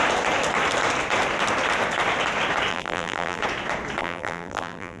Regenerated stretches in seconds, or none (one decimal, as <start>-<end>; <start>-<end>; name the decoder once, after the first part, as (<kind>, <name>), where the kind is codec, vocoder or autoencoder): 2.7-3.4 (vocoder, BigVGAN v2); 4.0-5.0